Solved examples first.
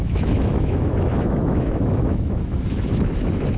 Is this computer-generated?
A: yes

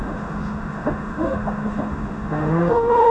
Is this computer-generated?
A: yes